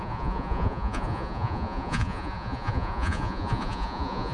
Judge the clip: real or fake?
fake